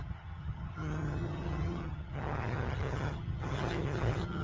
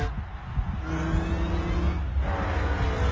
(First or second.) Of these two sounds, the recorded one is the second